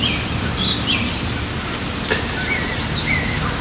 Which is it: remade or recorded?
recorded